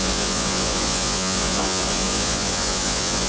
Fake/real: fake